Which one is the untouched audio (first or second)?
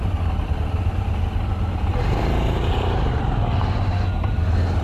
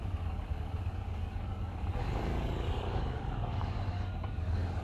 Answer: first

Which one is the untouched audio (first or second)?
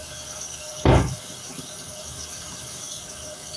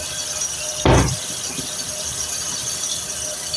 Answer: second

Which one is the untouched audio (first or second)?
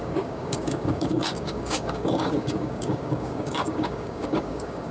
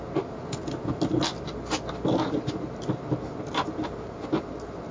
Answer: second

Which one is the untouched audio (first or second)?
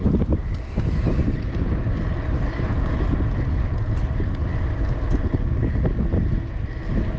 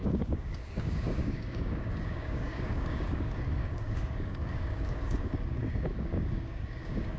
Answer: first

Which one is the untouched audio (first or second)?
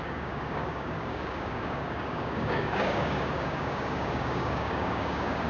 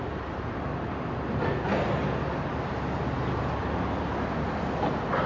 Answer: second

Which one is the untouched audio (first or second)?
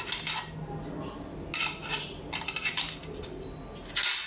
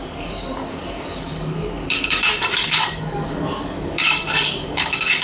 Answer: first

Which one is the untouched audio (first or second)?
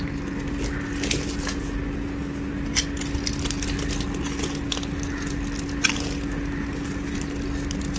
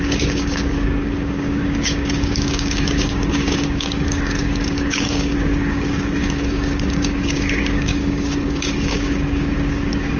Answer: first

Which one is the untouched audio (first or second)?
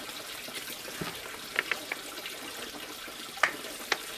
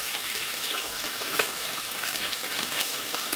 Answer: first